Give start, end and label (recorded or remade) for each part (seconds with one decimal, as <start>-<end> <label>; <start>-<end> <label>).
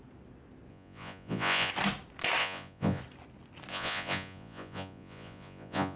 0.0-0.7 recorded; 0.7-1.7 remade; 1.7-2.4 recorded; 2.4-3.0 remade; 3.0-3.7 recorded; 3.7-6.0 remade